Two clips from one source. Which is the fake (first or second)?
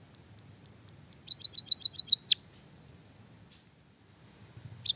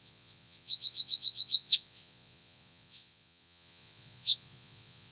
second